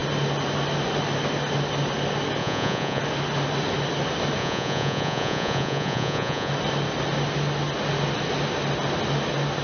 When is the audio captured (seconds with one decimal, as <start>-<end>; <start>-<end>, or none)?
0.0-2.4; 3.0-4.4; 6.5-9.6